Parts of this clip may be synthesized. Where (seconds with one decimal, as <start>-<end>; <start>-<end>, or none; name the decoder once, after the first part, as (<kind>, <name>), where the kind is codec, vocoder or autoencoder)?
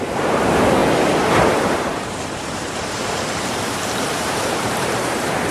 0.0-0.8 (vocoder, BigVGAN v2); 1.3-5.5